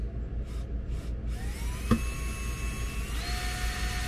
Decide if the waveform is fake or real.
real